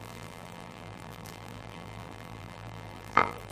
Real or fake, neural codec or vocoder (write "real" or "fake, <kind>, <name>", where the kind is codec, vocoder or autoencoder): fake, vocoder, BigVGAN v2